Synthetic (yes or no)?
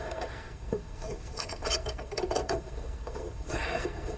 yes